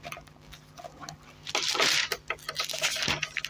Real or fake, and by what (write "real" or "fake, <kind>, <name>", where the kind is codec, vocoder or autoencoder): real